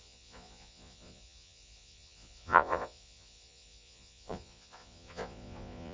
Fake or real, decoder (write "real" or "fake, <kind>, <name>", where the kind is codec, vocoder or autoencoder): fake, vocoder, Vocos